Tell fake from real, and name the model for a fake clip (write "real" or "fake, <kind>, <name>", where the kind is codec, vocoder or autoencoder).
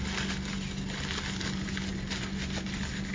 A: real